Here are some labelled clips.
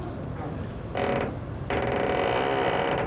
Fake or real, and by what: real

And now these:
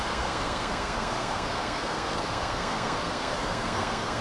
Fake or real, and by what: fake, codec, SNAC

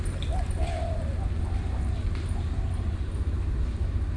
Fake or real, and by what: real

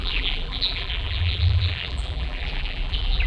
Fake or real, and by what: fake, vocoder, BigVGAN v2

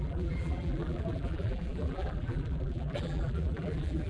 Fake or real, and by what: fake, vocoder, BigVGAN v2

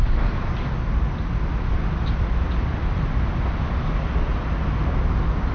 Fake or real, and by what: real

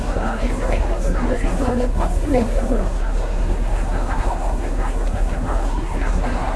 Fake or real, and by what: fake, codec, SNAC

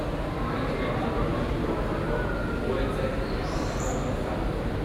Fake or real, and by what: real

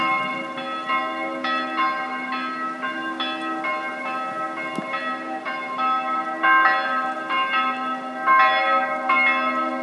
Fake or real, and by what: real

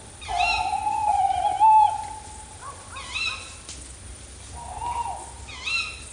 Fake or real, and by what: real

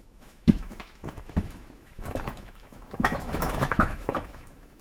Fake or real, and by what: fake, autoencoder, DAC-VAE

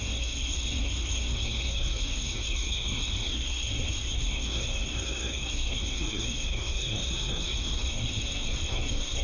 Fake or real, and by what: fake, codec, SNAC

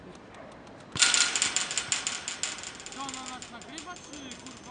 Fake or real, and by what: real